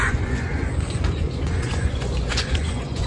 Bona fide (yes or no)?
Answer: no